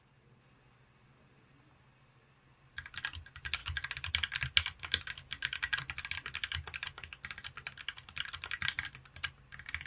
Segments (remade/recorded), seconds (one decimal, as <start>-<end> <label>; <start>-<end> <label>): 0.0-9.9 recorded